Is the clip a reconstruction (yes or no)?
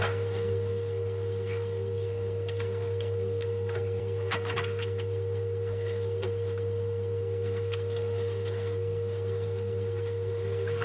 yes